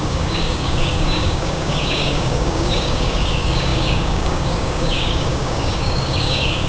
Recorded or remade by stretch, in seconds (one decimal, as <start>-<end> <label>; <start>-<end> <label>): 0.0-6.7 remade